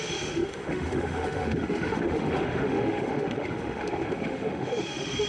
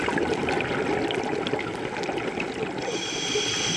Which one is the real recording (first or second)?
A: second